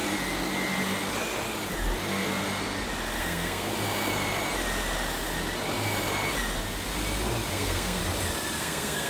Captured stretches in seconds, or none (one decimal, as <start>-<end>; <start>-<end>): 0.0-3.2; 3.7-7.5; 8.0-8.6